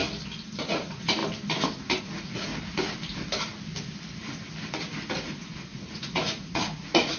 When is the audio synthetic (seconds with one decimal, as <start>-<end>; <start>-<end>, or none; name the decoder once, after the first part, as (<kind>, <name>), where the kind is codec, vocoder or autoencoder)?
0.6-1.2 (vocoder, Vocos); 2.0-2.5; 5.1-7.2